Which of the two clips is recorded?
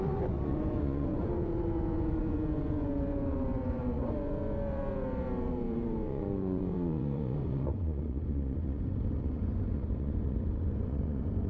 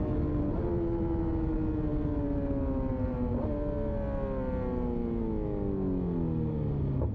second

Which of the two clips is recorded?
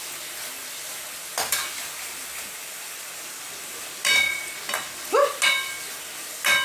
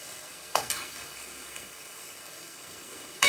first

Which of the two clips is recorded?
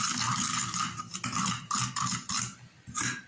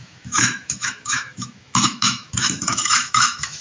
first